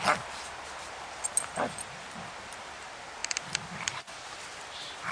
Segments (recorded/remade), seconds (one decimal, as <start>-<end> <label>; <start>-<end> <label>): 0.0-5.1 recorded